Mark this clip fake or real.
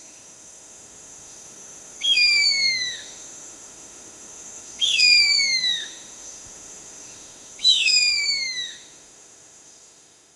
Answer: fake